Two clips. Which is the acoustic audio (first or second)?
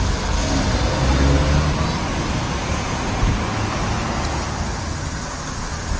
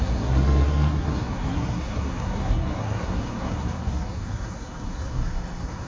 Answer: first